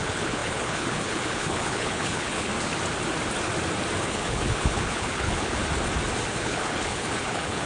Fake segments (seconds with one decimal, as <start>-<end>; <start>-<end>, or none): 0.0-2.5; 4.0-5.6; 6.3-7.7